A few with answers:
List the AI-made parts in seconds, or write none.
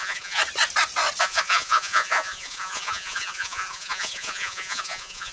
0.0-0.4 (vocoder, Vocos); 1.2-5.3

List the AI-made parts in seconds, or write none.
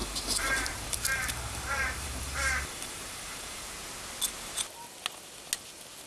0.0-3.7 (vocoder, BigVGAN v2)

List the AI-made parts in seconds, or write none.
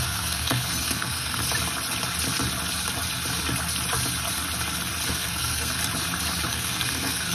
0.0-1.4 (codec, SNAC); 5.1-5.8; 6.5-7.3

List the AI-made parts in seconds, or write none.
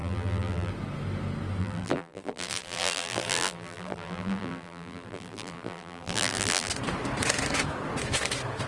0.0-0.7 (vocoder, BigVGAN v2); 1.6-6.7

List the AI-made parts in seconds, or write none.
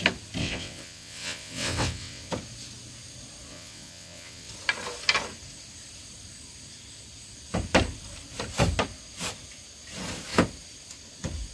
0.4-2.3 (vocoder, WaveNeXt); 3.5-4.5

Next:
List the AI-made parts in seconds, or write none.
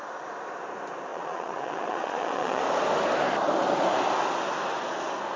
1.1-2.6 (vocoder, Vocos)